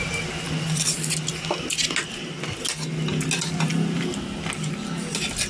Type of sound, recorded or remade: recorded